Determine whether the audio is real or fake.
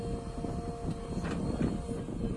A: real